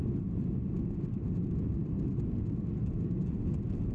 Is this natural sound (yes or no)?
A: yes